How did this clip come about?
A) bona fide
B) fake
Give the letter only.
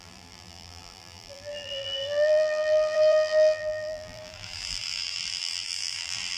B